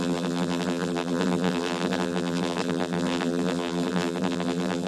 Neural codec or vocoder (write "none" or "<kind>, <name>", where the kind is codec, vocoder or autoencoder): vocoder, BigVGAN v2